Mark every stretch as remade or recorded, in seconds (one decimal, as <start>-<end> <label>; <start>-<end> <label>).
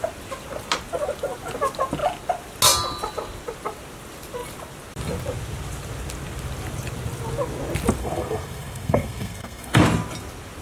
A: 0.0-8.0 recorded; 8.0-9.8 remade; 9.8-10.6 recorded